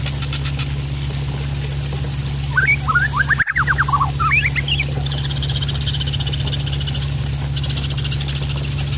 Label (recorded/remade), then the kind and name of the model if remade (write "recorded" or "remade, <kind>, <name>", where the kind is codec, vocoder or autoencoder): recorded